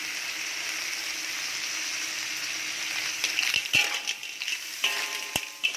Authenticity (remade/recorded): recorded